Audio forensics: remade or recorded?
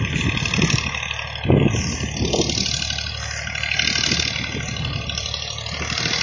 recorded